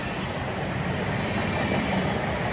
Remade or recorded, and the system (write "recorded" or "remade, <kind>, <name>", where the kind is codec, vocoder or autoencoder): recorded